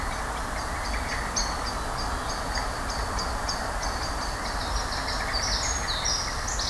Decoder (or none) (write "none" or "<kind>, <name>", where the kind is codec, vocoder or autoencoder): none